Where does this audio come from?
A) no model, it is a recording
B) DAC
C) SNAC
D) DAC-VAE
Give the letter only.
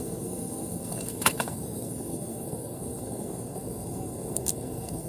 C